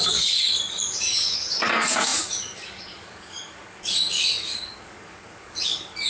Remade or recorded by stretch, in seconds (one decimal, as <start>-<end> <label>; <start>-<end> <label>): 0.0-6.1 remade